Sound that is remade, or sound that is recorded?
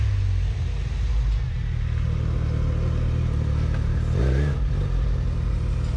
recorded